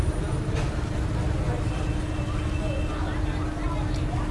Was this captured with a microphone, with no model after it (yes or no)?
yes